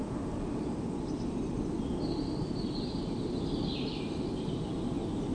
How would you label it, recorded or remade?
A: recorded